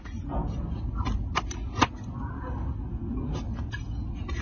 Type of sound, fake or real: real